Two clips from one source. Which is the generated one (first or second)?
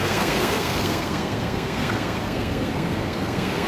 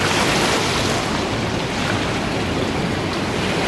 first